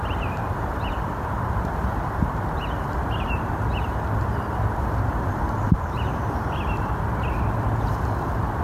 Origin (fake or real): fake